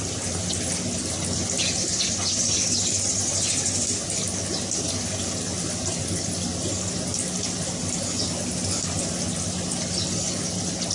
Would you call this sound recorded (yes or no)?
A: yes